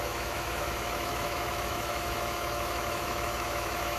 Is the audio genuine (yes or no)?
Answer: no